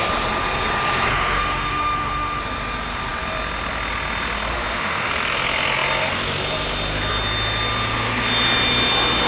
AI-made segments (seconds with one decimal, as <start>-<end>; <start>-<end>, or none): 1.1-2.4; 4.5-5.1

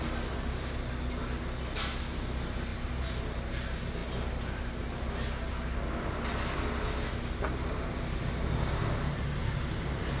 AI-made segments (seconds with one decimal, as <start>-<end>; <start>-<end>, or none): 4.0-4.6

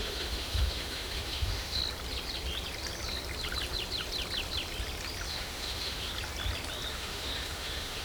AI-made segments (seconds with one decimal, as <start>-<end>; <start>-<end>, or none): 0.0-1.8; 5.3-6.1; 6.9-8.0

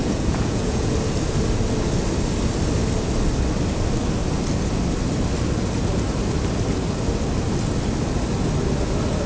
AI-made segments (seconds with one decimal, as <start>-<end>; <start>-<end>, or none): 0.0-0.9

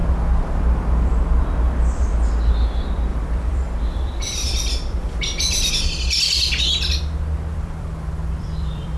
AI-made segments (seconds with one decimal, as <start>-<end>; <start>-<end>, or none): 3.1-5.7; 7.5-9.0

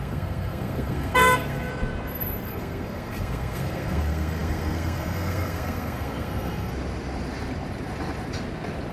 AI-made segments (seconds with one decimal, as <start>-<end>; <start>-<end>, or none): 0.0-1.7; 2.5-6.7

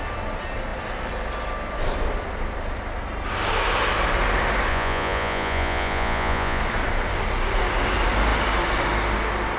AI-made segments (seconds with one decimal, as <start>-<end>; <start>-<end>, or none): 4.7-6.6